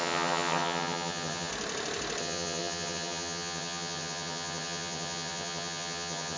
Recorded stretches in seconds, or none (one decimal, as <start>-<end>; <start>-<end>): 1.5-2.2

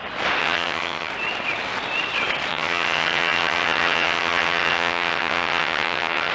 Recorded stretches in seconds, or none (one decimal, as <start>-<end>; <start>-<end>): 0.0-0.4; 1.1-2.5

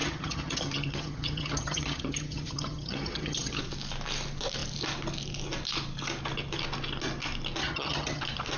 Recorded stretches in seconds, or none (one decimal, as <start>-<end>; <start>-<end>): 3.6-7.6; 8.2-8.6

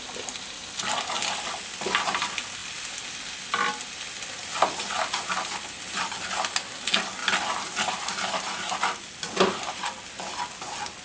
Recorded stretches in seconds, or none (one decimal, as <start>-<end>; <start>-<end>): 0.0-11.0

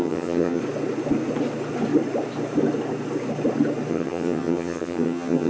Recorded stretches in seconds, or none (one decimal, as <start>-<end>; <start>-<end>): 0.6-3.9

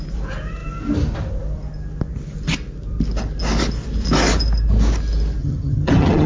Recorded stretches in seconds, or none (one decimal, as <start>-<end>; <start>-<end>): 0.0-5.4